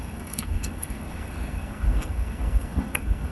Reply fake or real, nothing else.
fake